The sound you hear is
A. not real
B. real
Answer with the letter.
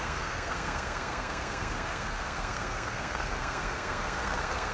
A